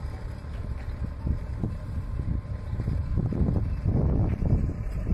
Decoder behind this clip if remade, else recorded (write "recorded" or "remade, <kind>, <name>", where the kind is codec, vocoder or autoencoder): recorded